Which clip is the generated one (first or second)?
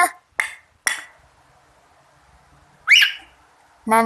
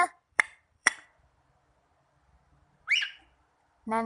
second